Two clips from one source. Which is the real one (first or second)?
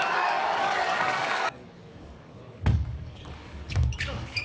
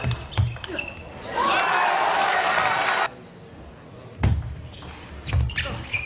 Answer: second